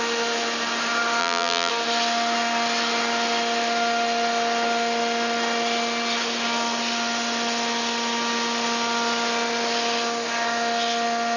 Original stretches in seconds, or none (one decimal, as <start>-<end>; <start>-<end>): 0.0-1.2; 1.7-11.4